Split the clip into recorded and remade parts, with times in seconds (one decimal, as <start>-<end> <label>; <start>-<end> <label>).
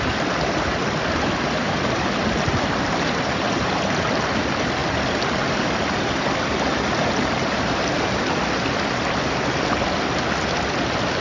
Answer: 0.0-11.2 recorded